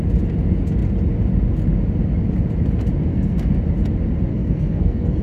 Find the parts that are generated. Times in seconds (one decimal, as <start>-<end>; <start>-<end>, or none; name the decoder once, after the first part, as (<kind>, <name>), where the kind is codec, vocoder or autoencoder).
3.1-3.6 (codec, SNAC); 4.3-5.2